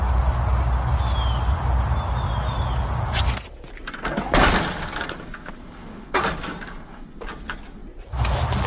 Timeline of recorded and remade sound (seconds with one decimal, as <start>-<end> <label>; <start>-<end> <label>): 0.0-8.7 recorded